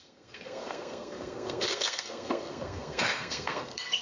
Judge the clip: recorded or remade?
remade